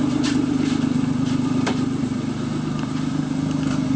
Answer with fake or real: fake